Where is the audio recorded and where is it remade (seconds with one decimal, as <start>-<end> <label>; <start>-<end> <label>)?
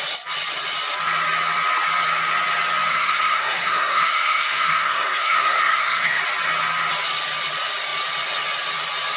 0.0-2.9 recorded; 2.9-6.2 remade; 6.2-9.2 recorded